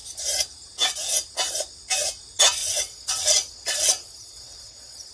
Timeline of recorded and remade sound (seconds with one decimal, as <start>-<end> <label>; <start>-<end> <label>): 0.0-2.6 recorded; 2.6-5.1 remade